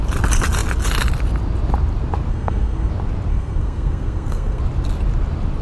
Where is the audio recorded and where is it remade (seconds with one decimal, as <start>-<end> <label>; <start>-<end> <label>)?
0.0-2.3 recorded; 2.3-2.9 remade; 2.9-3.3 recorded; 3.3-4.6 remade; 4.6-5.6 recorded